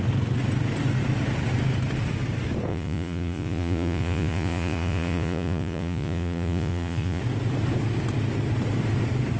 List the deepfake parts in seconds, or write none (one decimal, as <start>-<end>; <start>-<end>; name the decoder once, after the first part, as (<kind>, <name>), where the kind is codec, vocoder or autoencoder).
2.7-7.2 (vocoder, Vocos)

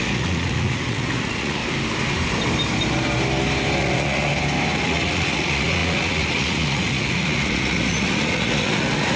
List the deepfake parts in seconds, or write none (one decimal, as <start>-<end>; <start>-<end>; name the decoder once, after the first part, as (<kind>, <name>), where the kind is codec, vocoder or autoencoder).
0.0-1.6 (vocoder, Vocos); 3.8-4.3; 4.8-9.2